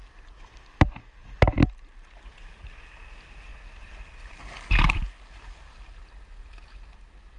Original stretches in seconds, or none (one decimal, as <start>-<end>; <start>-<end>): 0.0-7.4